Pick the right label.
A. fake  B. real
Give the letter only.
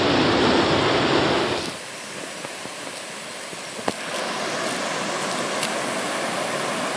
B